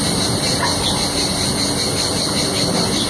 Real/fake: real